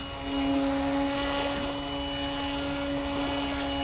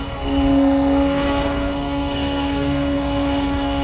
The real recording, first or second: first